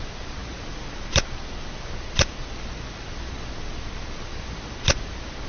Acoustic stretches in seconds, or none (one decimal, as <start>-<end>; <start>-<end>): 0.0-5.5